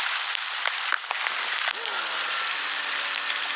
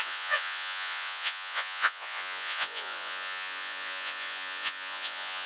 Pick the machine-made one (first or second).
second